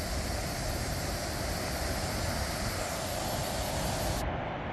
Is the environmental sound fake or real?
real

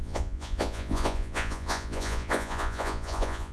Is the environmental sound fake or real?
fake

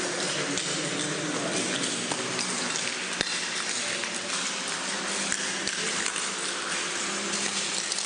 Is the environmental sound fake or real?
real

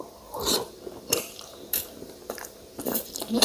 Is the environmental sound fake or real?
fake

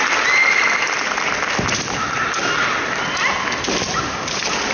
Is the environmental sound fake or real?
real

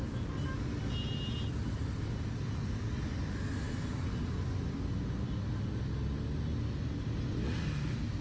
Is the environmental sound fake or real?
real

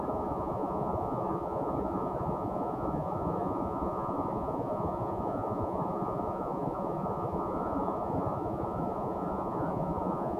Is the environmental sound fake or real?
fake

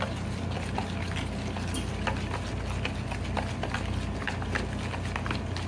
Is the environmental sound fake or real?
real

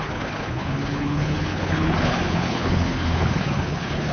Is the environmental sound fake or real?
fake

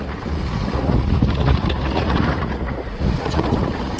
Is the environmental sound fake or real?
fake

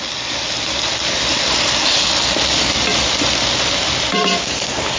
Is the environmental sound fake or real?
fake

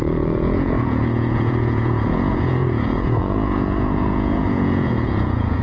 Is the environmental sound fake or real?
fake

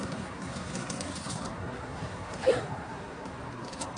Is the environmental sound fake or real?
fake